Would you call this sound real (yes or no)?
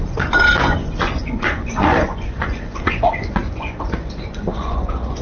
no